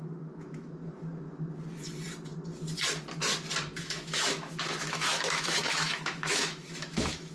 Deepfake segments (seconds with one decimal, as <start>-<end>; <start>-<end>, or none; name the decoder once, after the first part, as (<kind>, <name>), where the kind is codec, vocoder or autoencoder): 0.0-0.8 (autoencoder, DAC-VAE); 3.8-7.3